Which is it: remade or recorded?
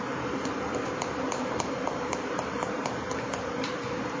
remade